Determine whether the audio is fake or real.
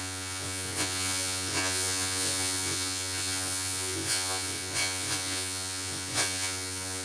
fake